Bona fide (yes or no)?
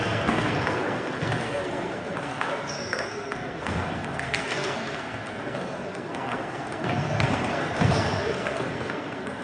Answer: no